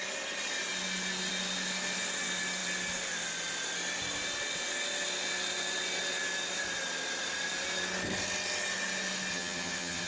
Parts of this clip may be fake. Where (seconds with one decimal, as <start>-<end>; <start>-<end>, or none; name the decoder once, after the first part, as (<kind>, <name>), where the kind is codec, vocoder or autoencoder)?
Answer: 9.3-10.1 (vocoder, HiFi-GAN)